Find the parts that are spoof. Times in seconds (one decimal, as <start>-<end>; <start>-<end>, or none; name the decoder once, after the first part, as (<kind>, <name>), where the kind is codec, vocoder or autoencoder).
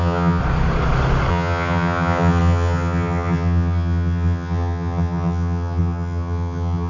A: 0.0-0.4 (vocoder, HiFi-GAN); 1.3-6.9